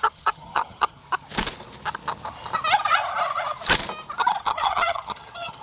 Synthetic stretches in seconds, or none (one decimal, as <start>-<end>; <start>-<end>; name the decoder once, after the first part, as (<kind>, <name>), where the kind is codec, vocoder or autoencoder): 0.0-1.0 (vocoder, HiFi-GAN); 4.4-5.6

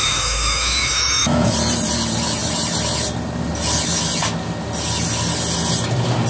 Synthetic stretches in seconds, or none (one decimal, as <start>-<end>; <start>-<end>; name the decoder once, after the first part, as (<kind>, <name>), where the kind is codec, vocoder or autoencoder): 0.0-1.5 (autoencoder, DAC-VAE)

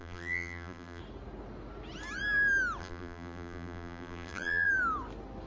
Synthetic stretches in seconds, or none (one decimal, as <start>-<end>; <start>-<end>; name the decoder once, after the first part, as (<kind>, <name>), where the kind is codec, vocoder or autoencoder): 0.0-1.0 (vocoder, BigVGAN v2); 2.8-4.7

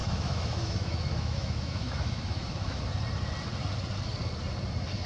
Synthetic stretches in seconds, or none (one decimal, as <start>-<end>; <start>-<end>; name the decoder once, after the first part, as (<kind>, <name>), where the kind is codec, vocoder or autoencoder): 0.0-2.8 (autoencoder, DAC-VAE)

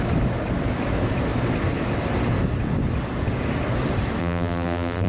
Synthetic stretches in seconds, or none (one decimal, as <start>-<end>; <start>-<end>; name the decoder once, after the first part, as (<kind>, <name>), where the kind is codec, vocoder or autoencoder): 4.2-5.1 (vocoder, BigVGAN v2)